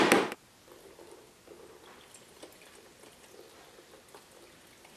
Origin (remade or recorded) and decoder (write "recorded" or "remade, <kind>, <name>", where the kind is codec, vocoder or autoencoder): recorded